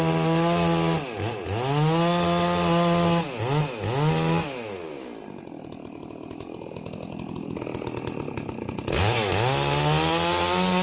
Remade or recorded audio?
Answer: recorded